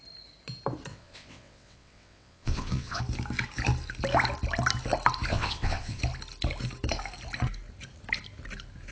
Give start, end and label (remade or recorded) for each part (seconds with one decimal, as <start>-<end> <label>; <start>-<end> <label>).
0.0-0.9 recorded; 0.9-3.0 remade; 3.0-5.3 recorded; 5.3-6.0 remade; 6.0-8.9 recorded